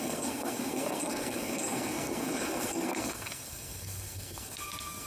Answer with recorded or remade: remade